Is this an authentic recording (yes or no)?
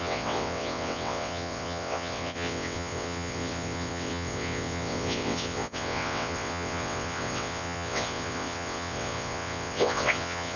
no